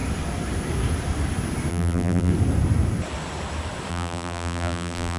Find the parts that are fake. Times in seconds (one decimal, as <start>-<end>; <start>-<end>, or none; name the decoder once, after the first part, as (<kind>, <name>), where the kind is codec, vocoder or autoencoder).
1.7-2.3 (vocoder, BigVGAN v2); 3.9-5.2